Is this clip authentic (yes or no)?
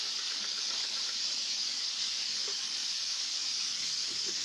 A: no